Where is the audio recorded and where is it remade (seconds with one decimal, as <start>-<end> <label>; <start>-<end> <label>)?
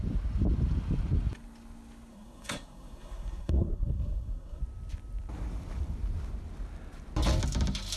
0.0-2.1 recorded; 2.1-4.6 remade; 4.6-8.0 recorded